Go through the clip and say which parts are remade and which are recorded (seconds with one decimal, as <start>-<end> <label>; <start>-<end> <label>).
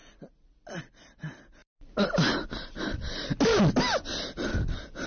0.0-5.1 recorded